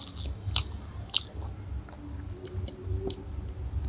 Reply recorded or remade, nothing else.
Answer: recorded